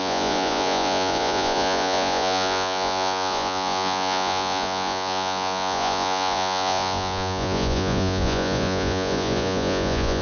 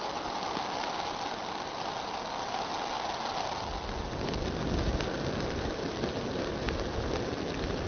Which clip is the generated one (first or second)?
first